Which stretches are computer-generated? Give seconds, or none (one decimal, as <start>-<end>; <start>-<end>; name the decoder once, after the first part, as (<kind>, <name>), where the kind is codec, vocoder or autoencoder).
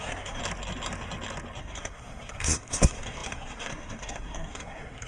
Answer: 0.0-0.4 (codec, SNAC); 1.6-5.1